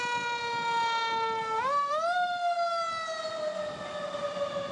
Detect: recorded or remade recorded